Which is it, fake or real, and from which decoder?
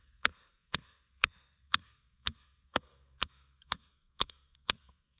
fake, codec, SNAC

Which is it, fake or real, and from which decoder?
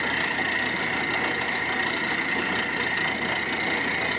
real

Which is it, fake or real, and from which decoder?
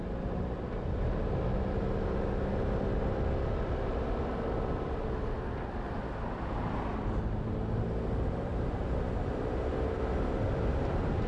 real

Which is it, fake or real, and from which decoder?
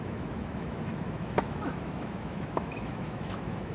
fake, autoencoder, DAC-VAE